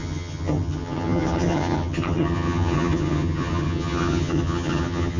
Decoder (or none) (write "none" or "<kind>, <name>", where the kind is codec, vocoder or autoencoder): vocoder, HiFi-GAN